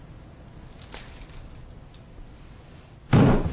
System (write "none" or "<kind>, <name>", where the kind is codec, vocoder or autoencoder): none